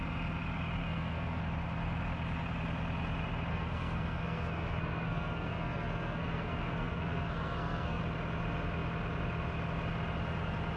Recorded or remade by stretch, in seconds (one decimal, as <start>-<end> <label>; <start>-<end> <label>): 0.0-0.8 recorded; 0.8-1.4 remade; 1.4-3.5 recorded; 3.5-8.0 remade; 8.0-10.8 recorded